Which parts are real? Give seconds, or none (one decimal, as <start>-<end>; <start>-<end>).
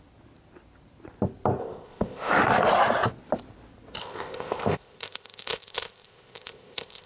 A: 0.0-1.6; 2.3-4.0